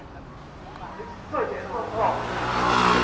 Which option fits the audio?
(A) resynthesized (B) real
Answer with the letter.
B